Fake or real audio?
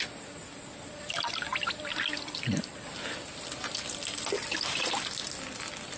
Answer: real